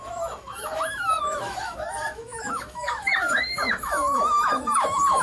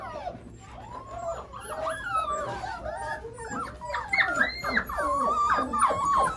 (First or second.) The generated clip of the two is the first